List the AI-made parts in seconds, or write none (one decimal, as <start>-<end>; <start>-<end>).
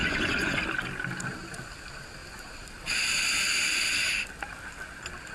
0.0-0.6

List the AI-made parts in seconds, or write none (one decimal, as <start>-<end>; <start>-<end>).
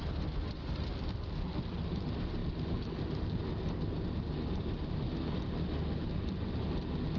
none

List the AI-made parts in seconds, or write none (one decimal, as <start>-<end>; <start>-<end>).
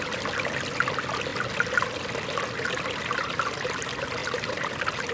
none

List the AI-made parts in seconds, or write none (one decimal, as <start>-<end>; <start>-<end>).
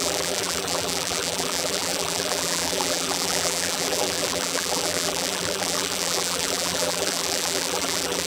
0.0-8.3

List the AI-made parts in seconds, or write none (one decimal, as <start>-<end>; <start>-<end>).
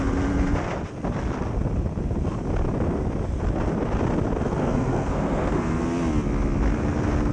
4.6-5.8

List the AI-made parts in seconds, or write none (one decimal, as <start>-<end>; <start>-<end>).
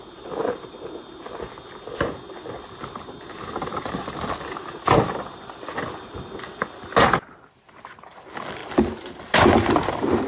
none